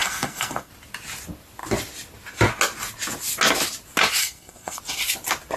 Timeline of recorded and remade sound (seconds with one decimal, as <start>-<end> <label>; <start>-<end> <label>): 0.0-0.7 remade; 0.7-4.2 recorded; 4.2-4.8 remade; 4.8-5.6 recorded

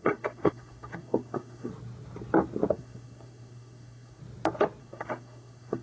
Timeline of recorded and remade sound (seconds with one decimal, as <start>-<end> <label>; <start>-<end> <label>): 0.0-1.7 remade; 1.7-2.7 recorded; 2.7-4.2 remade; 4.2-4.8 recorded; 4.8-5.8 remade

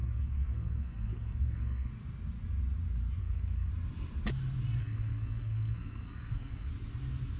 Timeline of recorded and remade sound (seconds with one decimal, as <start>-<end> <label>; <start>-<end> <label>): 0.0-1.9 remade; 1.9-3.2 recorded; 3.2-3.7 remade; 3.7-4.8 recorded; 4.8-6.7 remade; 6.7-7.4 recorded

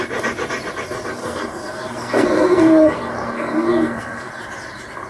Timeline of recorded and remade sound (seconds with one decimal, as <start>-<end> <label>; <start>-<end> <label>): 0.0-1.2 recorded; 1.2-4.3 remade; 4.3-5.1 recorded

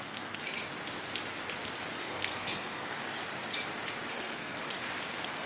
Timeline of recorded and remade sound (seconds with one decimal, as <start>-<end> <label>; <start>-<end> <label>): 0.0-0.4 remade; 0.4-2.0 recorded; 2.0-3.0 remade; 3.0-4.1 recorded; 4.1-4.6 remade; 4.6-5.1 recorded; 5.1-5.5 remade

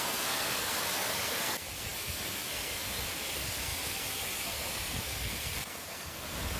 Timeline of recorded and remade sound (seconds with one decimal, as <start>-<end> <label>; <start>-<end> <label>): 0.0-6.6 remade

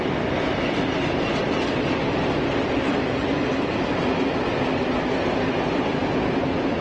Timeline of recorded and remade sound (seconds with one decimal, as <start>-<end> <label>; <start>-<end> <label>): 0.0-6.8 recorded

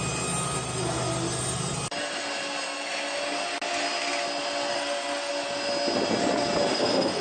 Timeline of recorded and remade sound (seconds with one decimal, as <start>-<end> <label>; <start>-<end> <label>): 0.0-4.7 recorded; 4.7-5.3 remade; 5.3-6.7 recorded; 6.7-7.2 remade